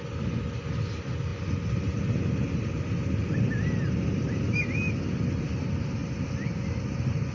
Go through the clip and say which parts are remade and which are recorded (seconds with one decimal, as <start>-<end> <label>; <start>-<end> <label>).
0.0-7.3 recorded